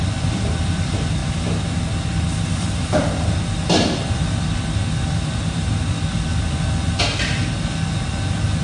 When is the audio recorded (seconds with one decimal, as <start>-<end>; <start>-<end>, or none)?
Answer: 1.2-2.6; 6.3-7.0